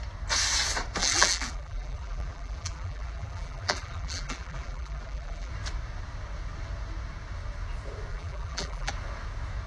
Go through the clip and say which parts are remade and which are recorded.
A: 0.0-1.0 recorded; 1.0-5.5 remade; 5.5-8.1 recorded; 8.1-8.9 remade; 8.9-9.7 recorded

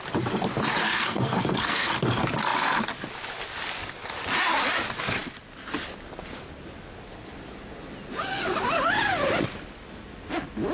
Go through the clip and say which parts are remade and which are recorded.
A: 0.0-0.8 recorded; 0.8-1.9 remade; 1.9-10.7 recorded

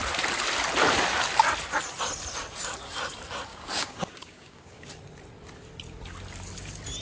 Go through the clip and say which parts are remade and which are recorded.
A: 0.0-3.5 recorded; 3.5-4.9 remade; 4.9-7.0 recorded

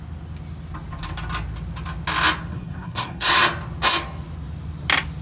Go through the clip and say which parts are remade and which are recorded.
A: 0.0-2.5 recorded; 2.5-3.3 remade; 3.3-5.2 recorded

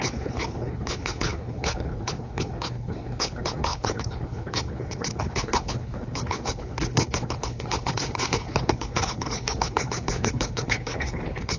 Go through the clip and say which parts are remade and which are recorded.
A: 0.0-11.6 remade

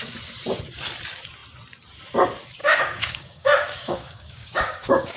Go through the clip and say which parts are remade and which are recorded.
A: 0.0-2.6 recorded; 2.6-5.2 remade